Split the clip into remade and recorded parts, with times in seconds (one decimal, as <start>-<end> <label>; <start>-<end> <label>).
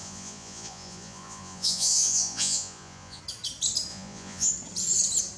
0.0-3.2 remade; 3.2-3.9 recorded; 3.9-4.5 remade; 4.5-5.4 recorded